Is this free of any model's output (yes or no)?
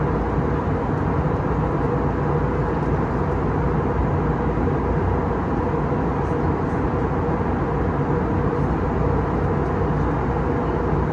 yes